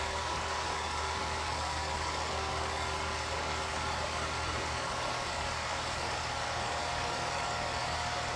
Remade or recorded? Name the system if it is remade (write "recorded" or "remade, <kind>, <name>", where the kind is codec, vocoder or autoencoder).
remade, codec, DAC